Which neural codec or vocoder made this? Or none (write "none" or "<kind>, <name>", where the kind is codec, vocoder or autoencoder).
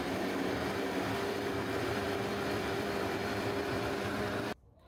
vocoder, BigVGAN v2